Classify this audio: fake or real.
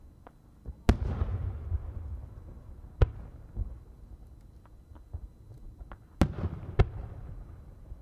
real